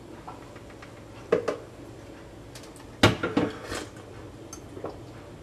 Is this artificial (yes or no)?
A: no